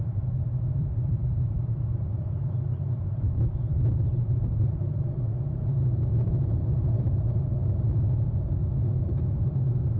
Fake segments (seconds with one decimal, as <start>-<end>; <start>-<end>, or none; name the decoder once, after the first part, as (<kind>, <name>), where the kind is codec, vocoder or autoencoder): 0.0-7.6 (vocoder, BigVGAN v2); 9.0-10.0